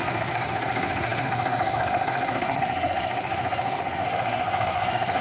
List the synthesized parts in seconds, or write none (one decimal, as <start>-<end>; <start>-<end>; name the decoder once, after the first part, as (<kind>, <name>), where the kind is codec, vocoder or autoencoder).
0.0-5.2 (codec, SNAC)